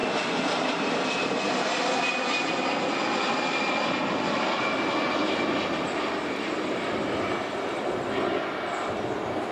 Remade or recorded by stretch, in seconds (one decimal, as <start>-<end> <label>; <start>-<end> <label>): 0.0-1.1 remade; 1.1-9.5 recorded